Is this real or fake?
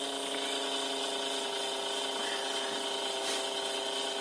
real